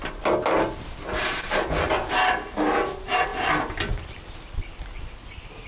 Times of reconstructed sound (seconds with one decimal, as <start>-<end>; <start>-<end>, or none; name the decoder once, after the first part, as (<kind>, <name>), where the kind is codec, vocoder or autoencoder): none

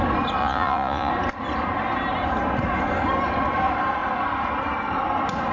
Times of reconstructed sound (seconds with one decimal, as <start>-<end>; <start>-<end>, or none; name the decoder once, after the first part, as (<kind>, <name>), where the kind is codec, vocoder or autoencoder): 0.4-1.1 (vocoder, Vocos)

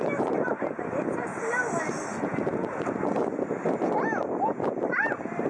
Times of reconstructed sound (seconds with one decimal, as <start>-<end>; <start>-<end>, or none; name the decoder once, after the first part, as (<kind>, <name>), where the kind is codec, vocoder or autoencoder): none

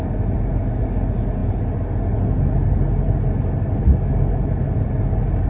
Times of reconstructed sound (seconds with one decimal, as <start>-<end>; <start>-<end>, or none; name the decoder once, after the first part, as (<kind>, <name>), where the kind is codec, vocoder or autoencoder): none

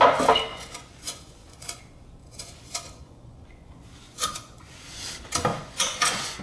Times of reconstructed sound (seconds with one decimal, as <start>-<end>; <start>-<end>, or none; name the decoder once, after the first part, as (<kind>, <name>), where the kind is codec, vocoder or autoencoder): 0.5-1.8 (vocoder, Vocos); 2.2-5.1; 5.5-6.4

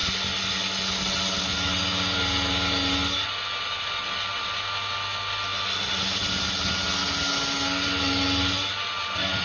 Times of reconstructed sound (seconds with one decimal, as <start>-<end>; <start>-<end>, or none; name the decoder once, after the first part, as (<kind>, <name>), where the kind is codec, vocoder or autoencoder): none

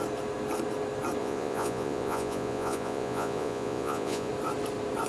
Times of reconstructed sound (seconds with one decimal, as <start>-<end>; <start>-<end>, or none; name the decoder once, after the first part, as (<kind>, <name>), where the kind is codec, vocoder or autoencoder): 1.2-4.3 (vocoder, Vocos)